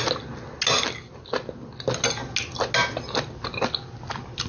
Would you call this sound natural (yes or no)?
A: yes